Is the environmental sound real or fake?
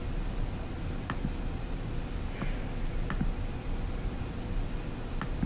real